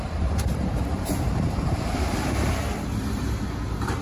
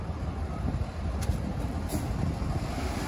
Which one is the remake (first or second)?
first